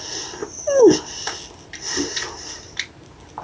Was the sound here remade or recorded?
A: recorded